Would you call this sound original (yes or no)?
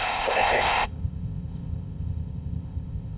no